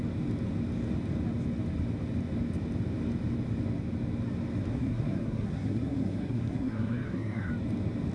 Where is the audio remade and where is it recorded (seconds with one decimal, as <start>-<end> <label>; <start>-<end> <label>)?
0.0-4.7 recorded; 4.7-7.5 remade; 7.5-8.1 recorded